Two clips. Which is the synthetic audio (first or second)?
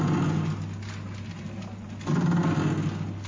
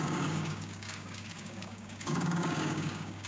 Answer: second